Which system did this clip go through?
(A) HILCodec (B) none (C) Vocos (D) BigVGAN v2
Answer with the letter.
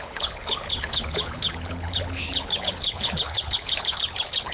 A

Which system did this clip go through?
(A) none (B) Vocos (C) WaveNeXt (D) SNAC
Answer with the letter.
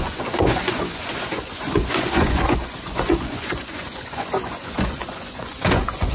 B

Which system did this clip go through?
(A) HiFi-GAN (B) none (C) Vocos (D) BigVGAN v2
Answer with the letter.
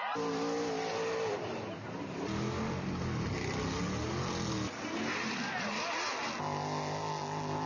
B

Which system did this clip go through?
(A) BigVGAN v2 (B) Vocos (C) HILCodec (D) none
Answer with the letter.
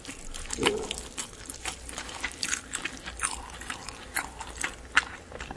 D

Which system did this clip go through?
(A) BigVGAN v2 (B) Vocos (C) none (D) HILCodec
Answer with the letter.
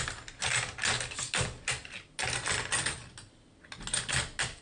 C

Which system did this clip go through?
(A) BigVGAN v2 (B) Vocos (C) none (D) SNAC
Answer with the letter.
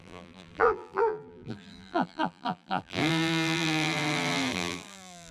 A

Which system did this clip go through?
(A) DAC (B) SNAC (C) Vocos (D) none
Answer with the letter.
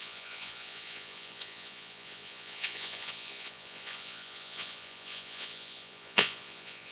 C